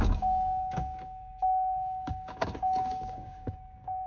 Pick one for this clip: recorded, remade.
remade